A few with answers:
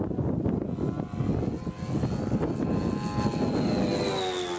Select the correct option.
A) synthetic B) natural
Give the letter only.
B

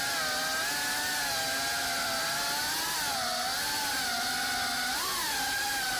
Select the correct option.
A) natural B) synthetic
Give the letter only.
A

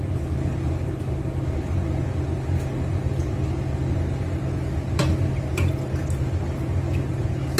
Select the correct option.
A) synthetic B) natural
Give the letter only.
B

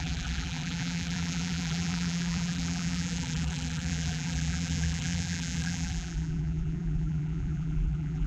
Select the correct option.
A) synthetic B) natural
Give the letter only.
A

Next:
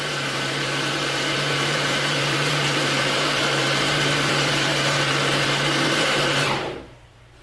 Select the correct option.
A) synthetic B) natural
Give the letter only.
A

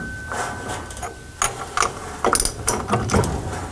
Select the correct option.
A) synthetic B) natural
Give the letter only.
B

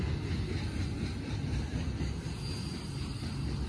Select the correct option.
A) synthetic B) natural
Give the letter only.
B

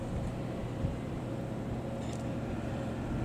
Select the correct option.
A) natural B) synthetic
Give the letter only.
B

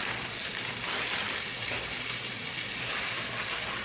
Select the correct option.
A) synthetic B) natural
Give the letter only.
B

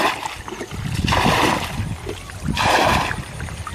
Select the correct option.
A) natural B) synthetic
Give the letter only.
B